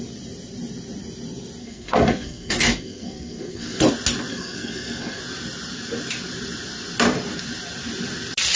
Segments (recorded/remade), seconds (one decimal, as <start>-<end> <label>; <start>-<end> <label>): 0.0-1.6 recorded; 1.6-3.8 remade; 3.8-4.3 recorded; 4.3-5.2 remade; 5.2-8.6 recorded